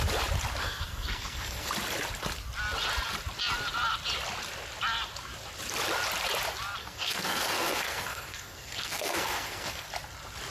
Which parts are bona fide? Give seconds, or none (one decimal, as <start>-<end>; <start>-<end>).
0.0-0.6; 1.7-6.8; 9.9-10.5

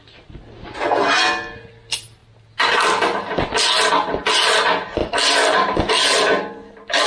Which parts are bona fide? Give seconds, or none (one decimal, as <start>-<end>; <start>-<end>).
0.0-7.1

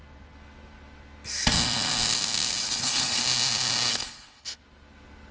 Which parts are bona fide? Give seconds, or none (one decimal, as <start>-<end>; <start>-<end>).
0.0-2.6; 3.2-3.9; 4.6-5.3

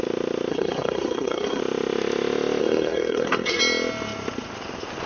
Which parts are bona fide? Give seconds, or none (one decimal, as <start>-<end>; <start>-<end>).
0.0-0.5; 1.6-2.6; 3.6-5.1

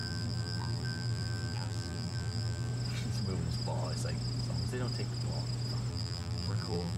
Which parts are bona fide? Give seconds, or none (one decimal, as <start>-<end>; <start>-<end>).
2.7-5.9